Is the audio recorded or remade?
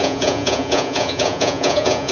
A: remade